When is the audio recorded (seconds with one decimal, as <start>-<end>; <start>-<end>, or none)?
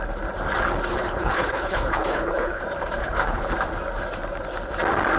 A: 0.0-0.9; 2.6-3.0; 3.5-5.2